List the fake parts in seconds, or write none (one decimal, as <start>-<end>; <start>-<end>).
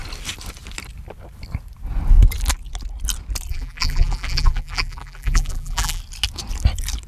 3.5-6.0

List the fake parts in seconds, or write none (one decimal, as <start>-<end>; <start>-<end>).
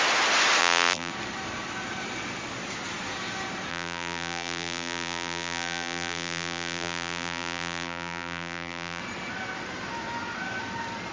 0.6-1.1; 3.7-9.0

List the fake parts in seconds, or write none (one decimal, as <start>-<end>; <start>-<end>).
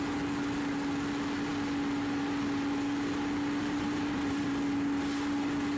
3.6-4.5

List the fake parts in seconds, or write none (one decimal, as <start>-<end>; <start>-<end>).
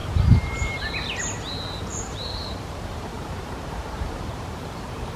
0.0-0.8; 1.9-5.2